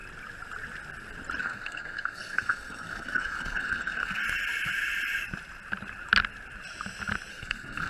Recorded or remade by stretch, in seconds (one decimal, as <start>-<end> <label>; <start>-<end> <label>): 0.0-1.4 recorded; 1.4-4.2 remade; 4.2-7.3 recorded; 7.3-7.9 remade